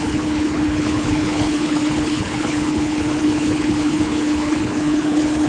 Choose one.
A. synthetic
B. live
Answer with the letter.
A